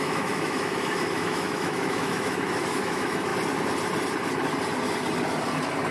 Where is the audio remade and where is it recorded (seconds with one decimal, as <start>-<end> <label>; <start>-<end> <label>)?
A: 0.0-3.3 remade; 3.3-5.9 recorded